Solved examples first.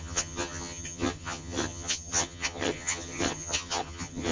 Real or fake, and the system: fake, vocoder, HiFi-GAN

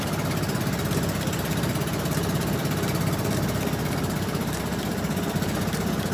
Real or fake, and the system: real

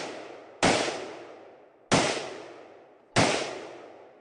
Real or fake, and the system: real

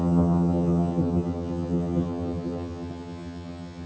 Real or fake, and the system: fake, vocoder, HiFi-GAN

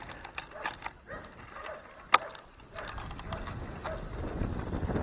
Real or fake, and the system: real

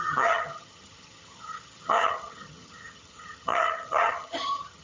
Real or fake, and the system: fake, vocoder, HiFi-GAN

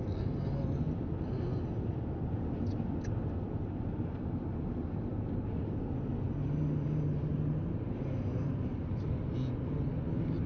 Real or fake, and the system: real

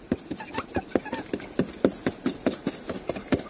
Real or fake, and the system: real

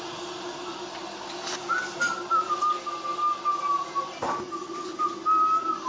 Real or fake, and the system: real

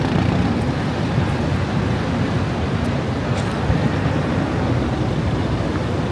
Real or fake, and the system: real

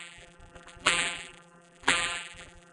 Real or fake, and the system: fake, vocoder, BigVGAN v2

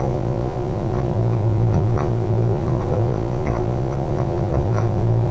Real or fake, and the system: fake, vocoder, Vocos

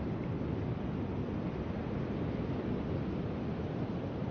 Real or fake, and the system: real